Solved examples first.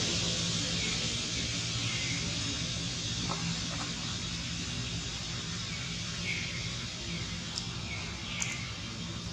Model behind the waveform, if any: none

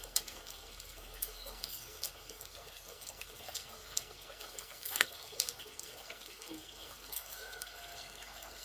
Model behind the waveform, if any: codec, SNAC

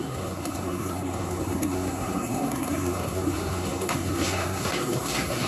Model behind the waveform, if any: codec, SNAC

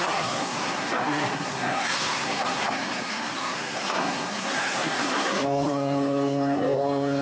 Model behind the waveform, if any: codec, SNAC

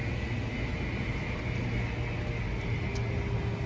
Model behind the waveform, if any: none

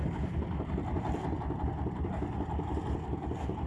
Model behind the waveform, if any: none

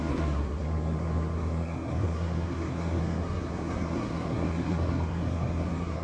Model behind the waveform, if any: codec, SNAC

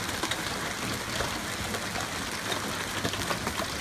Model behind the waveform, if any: none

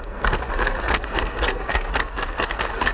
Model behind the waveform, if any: codec, SNAC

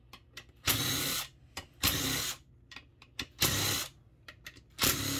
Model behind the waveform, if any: none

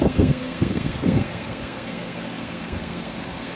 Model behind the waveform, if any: codec, SNAC